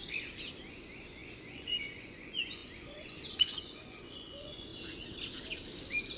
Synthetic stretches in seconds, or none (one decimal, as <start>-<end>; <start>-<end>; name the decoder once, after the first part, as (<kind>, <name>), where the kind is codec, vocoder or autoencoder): 0.7-4.7 (vocoder, Vocos)